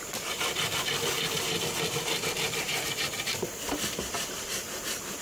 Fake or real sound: real